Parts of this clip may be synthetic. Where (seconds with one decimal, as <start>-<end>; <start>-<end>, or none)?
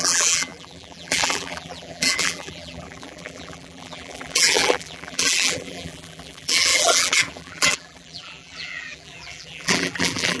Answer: 0.0-10.4